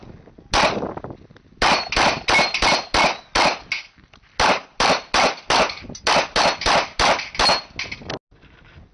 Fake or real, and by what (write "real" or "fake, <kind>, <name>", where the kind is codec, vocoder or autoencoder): real